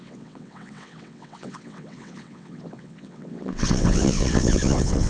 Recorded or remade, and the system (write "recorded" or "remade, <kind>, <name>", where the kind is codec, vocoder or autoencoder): remade, vocoder, WaveNeXt